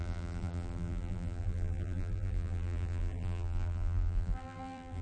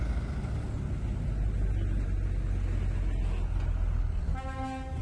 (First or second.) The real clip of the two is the second